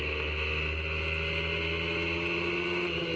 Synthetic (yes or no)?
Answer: no